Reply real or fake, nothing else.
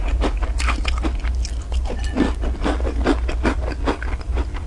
real